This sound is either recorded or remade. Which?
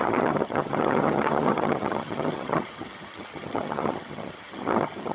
remade